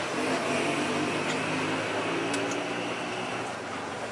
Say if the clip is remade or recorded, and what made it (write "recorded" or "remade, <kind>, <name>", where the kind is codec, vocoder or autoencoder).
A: recorded